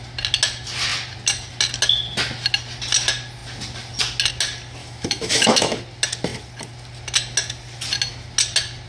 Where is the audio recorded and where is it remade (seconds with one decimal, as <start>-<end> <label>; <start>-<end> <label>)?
0.0-4.8 recorded; 4.8-5.8 remade; 5.8-8.9 recorded